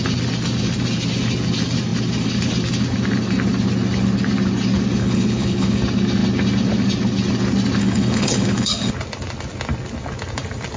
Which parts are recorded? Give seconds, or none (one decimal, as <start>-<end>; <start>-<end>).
0.0-5.0; 5.8-7.8; 8.9-10.8